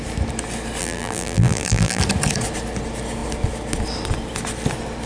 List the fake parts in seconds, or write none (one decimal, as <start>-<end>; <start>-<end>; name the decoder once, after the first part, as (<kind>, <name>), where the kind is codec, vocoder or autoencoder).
0.8-2.0 (vocoder, BigVGAN v2)